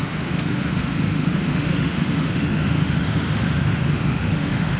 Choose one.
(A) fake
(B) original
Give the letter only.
A